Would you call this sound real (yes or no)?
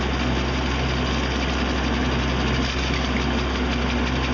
yes